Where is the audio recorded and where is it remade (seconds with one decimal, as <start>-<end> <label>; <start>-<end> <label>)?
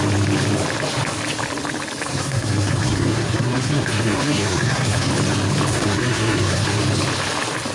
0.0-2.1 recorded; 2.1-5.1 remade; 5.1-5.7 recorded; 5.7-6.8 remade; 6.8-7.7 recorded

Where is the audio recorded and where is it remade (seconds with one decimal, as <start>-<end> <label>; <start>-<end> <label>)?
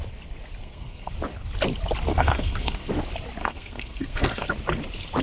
0.0-0.6 recorded; 0.6-1.1 remade; 1.1-2.1 recorded; 2.1-2.9 remade; 2.9-3.4 recorded; 3.4-4.5 remade; 4.5-5.2 recorded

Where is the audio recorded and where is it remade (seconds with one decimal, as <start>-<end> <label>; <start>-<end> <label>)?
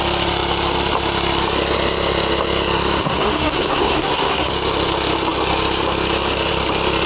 0.0-3.0 recorded; 3.0-4.5 remade; 4.5-7.1 recorded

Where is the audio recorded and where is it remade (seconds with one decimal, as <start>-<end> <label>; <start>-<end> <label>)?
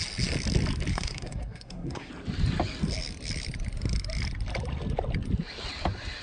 0.0-0.9 recorded; 0.9-2.1 remade; 2.1-6.2 recorded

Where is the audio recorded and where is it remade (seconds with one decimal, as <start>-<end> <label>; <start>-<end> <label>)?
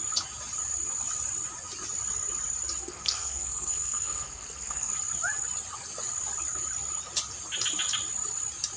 0.0-2.8 recorded; 2.8-4.9 remade; 4.9-8.8 recorded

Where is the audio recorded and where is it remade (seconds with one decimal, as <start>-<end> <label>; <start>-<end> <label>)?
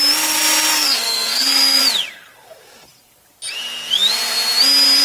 0.0-0.7 recorded; 0.7-1.8 remade; 1.8-5.0 recorded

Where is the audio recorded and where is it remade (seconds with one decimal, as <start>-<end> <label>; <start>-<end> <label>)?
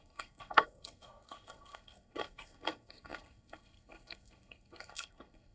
0.0-5.5 remade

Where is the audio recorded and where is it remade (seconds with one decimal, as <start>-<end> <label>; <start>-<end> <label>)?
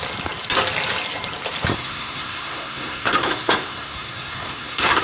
0.0-1.7 recorded; 1.7-5.0 remade